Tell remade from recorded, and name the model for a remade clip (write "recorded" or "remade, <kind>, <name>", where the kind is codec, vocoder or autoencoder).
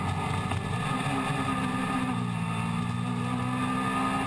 recorded